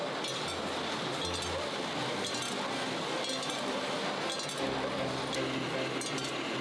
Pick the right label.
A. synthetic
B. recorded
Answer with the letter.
B